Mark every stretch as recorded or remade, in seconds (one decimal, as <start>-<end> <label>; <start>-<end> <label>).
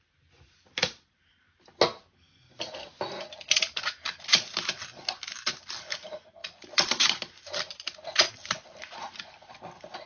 0.0-10.1 recorded